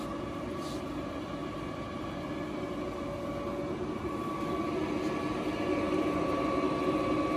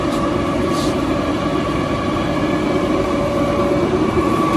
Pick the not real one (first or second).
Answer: second